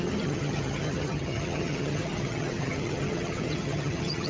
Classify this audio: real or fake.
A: fake